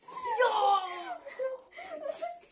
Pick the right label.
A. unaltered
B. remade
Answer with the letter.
A